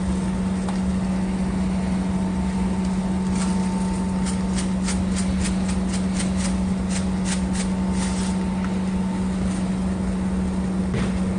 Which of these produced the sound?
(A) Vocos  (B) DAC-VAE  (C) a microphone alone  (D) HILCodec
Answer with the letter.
C